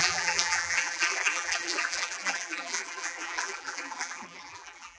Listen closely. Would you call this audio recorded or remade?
remade